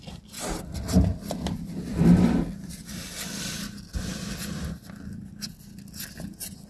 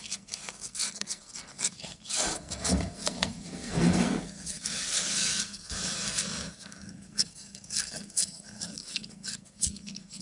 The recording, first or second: first